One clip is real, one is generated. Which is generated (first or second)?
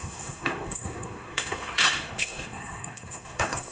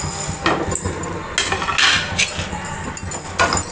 first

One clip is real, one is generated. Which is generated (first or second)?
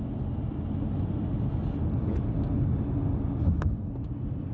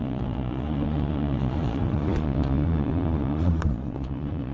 second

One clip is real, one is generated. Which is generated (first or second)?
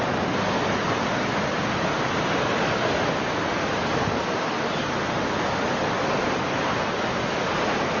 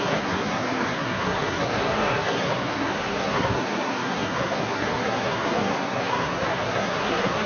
second